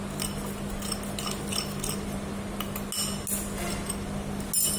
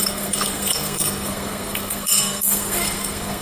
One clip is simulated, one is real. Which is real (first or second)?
first